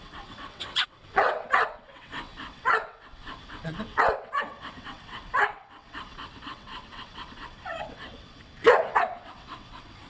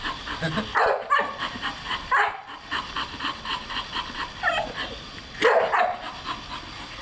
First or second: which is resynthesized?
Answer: first